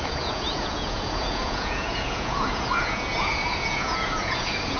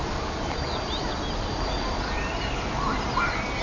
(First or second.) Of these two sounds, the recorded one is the second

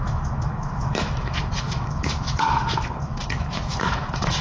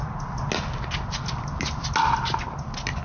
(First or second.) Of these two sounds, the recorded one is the second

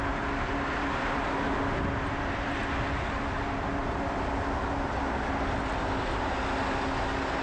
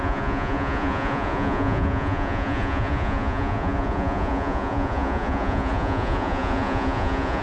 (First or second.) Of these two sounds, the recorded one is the first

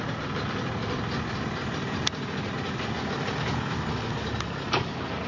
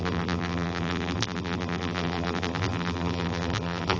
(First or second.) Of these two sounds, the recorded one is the first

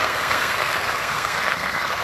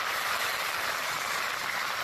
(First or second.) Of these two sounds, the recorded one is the second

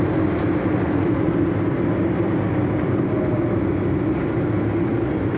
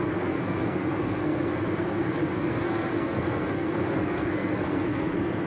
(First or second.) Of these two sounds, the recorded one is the first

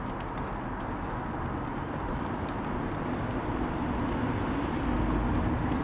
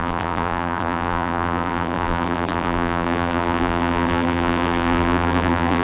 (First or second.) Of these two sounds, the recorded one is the first